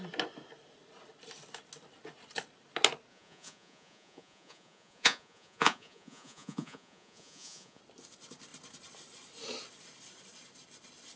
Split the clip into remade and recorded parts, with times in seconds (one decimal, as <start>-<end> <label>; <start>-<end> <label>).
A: 0.0-3.1 recorded; 3.1-7.8 remade; 7.8-11.2 recorded